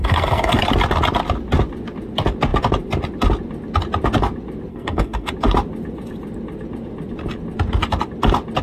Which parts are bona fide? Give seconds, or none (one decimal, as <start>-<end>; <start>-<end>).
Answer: 0.6-4.7; 5.3-8.6